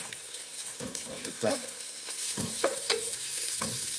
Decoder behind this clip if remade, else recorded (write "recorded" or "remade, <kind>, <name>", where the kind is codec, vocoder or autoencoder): remade, codec, SNAC